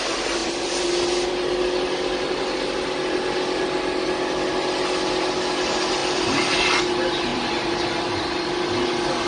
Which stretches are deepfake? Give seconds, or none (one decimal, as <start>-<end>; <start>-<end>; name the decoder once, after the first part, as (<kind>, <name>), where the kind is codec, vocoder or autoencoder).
0.4-1.3 (vocoder, BigVGAN v2); 6.0-6.8; 7.3-8.6